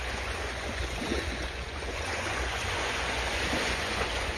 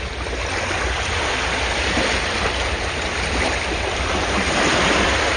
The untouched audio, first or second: second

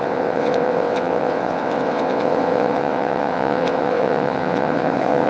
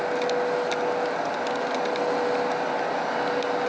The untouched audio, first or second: second